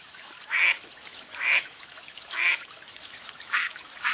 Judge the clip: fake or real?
fake